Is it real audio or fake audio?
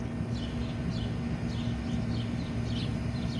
real